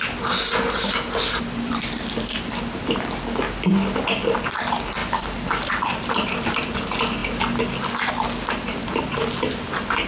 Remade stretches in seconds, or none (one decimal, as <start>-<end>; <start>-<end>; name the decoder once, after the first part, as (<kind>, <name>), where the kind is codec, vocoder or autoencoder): none